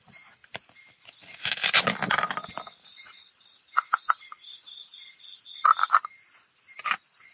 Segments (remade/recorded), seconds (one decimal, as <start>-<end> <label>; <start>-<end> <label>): 0.0-7.3 recorded